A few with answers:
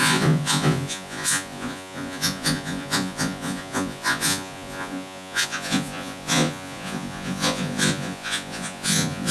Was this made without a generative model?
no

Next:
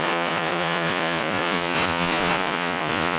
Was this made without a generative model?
no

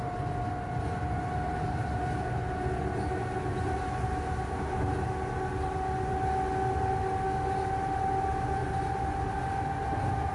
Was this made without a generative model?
yes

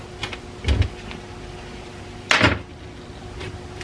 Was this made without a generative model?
yes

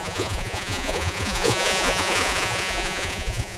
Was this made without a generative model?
no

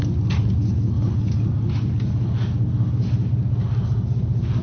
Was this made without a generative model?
yes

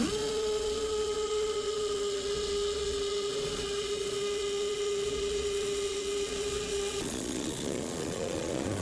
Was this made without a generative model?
no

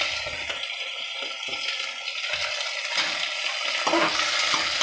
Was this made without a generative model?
yes